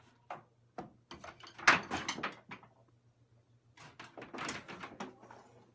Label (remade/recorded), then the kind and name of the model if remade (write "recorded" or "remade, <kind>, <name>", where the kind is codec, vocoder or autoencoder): recorded